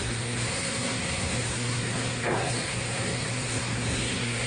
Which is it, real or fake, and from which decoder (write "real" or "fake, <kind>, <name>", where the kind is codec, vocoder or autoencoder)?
fake, codec, SNAC